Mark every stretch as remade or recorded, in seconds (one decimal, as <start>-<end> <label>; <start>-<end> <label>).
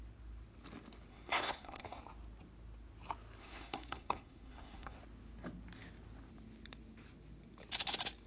0.0-1.1 recorded; 1.1-2.0 remade; 2.0-3.4 recorded; 3.4-5.0 remade; 5.0-8.3 recorded